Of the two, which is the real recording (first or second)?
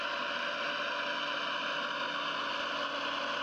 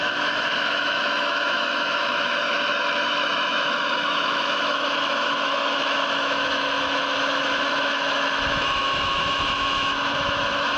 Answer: first